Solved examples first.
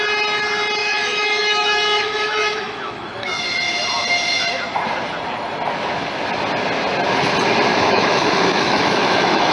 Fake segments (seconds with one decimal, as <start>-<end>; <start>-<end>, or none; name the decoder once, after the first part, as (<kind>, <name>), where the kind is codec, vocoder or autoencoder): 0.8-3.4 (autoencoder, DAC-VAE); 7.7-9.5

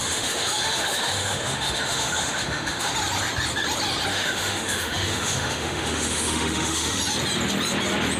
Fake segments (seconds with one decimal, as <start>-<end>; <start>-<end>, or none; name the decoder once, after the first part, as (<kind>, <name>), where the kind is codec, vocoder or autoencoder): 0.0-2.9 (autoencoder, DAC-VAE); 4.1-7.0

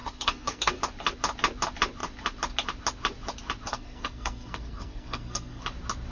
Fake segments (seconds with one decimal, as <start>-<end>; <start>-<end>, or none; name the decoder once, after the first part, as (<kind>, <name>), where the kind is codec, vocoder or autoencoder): 0.0-0.8 (codec, SNAC); 3.7-5.6